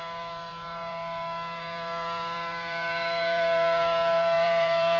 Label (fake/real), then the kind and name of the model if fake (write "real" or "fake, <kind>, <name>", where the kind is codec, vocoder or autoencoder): fake, vocoder, BigVGAN v2